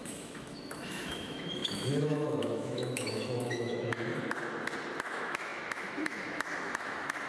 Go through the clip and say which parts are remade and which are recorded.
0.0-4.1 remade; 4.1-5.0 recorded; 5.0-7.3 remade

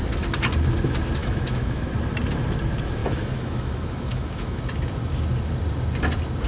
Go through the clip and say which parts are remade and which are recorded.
0.0-1.2 recorded; 1.2-1.9 remade; 1.9-3.0 recorded; 3.0-4.6 remade; 4.6-6.5 recorded